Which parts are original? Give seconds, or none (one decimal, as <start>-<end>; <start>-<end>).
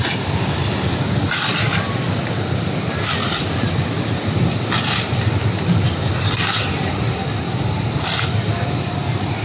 0.0-3.2; 5.8-9.4